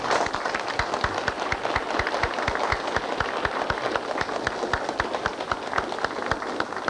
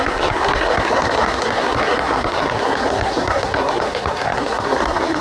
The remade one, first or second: second